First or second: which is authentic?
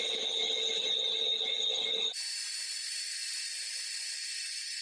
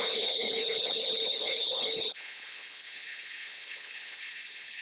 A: first